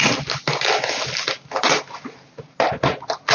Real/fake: real